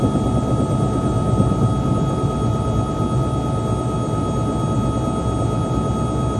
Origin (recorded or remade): recorded